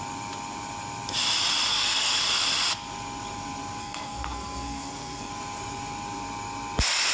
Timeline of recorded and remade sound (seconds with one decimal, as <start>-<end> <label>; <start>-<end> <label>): 0.0-1.7 recorded; 1.7-2.2 remade; 2.2-3.8 recorded; 3.8-5.3 remade; 5.3-7.1 recorded

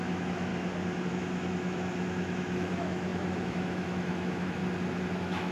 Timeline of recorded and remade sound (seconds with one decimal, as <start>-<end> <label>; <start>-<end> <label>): 0.0-0.5 remade; 0.5-1.1 recorded; 1.1-4.6 remade; 4.6-5.1 recorded; 5.1-5.5 remade

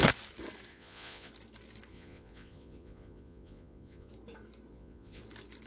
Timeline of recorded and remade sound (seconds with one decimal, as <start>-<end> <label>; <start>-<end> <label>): 0.0-0.7 recorded; 0.7-1.3 remade; 1.3-1.9 recorded; 1.9-4.1 remade; 4.1-4.7 recorded; 4.7-5.2 remade; 5.2-5.7 recorded